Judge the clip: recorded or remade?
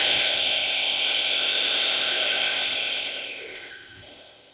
remade